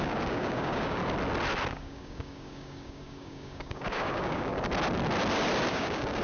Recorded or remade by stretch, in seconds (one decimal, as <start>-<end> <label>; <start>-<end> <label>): 0.0-1.0 remade; 1.0-1.7 recorded; 1.7-4.5 remade; 4.5-5.7 recorded; 5.7-6.2 remade